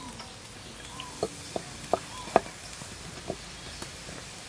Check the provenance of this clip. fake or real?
real